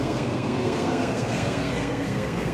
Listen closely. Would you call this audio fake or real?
fake